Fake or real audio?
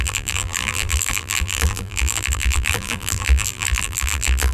fake